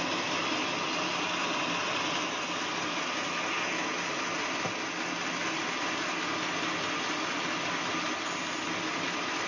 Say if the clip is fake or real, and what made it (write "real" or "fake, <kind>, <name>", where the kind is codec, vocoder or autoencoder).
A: real